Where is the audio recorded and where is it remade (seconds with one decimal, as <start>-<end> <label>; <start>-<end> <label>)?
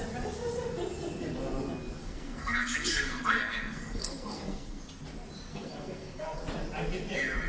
0.0-2.0 recorded; 2.0-4.8 remade; 4.8-5.5 recorded; 5.5-6.4 remade; 6.4-7.5 recorded